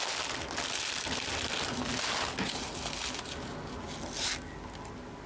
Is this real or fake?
real